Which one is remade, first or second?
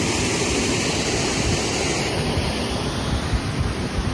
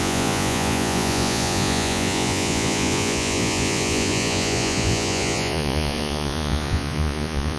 second